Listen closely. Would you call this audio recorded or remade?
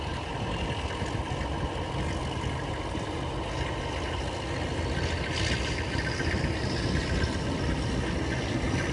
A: recorded